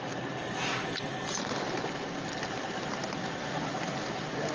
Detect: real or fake real